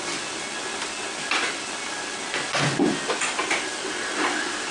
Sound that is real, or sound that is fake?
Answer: real